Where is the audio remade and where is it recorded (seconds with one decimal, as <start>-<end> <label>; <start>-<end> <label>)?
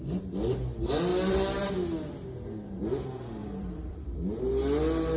0.0-1.1 recorded; 1.1-1.7 remade; 1.7-3.4 recorded; 3.4-4.2 remade; 4.2-5.2 recorded